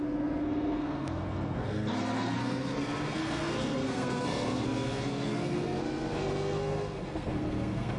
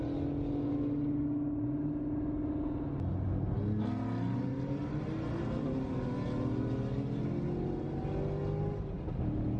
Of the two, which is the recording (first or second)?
second